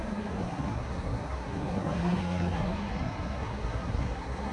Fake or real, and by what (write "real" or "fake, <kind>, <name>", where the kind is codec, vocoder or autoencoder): fake, codec, SNAC